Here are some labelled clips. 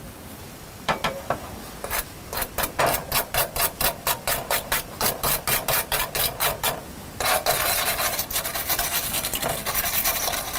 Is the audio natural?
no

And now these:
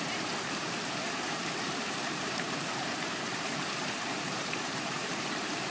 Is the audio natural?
no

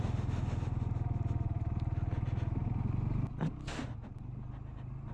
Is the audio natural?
yes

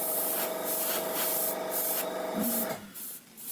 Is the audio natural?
yes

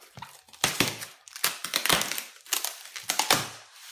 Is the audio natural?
yes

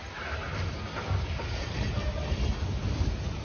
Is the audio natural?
yes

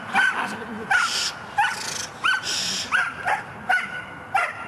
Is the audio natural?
yes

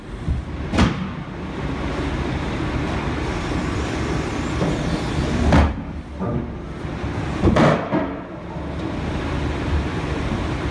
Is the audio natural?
no